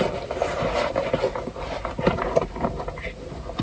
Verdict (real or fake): real